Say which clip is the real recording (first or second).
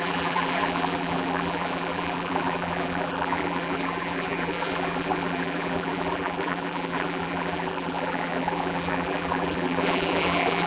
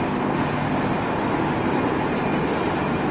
second